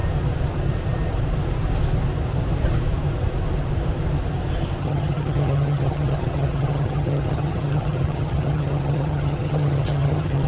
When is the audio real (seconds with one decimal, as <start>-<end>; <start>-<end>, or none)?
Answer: 0.0-4.8